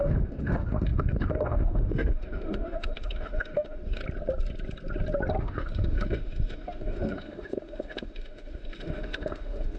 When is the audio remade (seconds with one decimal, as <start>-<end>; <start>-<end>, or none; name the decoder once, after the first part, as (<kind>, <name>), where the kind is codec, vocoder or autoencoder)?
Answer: 0.0-4.0 (autoencoder, DAC-VAE); 5.4-9.8